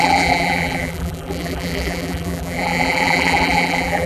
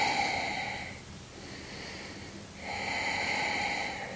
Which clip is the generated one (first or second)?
first